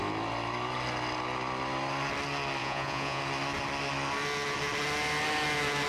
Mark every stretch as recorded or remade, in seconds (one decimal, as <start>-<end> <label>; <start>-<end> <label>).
0.0-2.6 recorded; 2.6-3.2 remade; 3.2-5.9 recorded